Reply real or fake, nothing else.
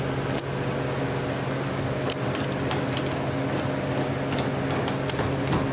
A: real